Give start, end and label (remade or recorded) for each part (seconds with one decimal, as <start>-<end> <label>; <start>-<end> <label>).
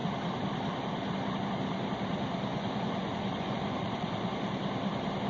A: 0.0-2.5 recorded; 2.5-4.3 remade; 4.3-5.3 recorded